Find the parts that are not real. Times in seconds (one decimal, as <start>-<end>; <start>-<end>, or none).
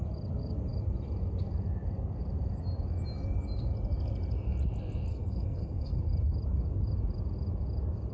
5.1-6.0